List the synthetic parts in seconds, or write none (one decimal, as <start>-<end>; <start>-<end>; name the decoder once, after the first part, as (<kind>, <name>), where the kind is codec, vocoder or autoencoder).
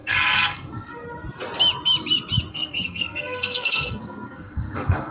0.0-0.9 (codec, SNAC); 2.5-5.1